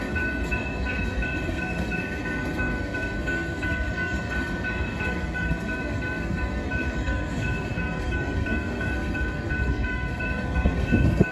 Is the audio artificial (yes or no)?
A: yes